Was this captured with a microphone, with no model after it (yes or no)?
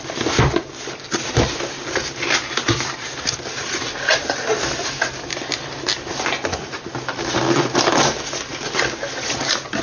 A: yes